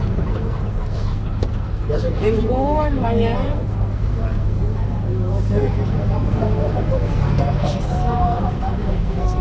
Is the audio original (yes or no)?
no